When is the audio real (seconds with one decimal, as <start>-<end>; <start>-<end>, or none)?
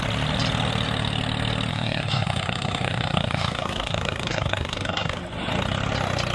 0.0-1.7; 5.2-6.3